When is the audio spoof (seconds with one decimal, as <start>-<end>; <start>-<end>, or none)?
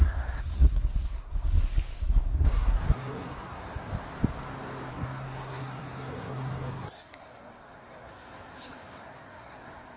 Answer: 0.0-3.9; 4.9-10.0